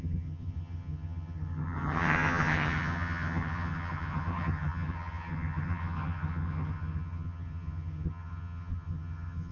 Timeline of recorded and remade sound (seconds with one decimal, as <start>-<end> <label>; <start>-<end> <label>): 0.0-9.5 remade